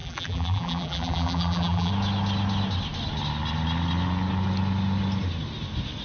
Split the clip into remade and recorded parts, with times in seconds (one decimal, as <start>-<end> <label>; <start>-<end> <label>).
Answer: 0.0-1.9 remade; 1.9-6.0 recorded